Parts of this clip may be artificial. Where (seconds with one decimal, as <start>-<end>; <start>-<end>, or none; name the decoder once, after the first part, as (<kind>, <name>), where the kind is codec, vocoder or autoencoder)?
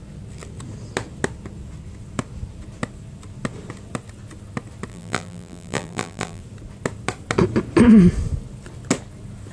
4.9-6.4 (vocoder, BigVGAN v2)